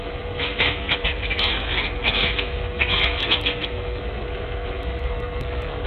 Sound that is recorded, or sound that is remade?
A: remade